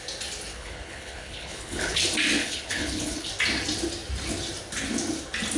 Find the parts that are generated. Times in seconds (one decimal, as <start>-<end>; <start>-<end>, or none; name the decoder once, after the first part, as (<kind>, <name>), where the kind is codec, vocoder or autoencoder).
0.5-2.0 (codec, HILCodec); 2.4-3.3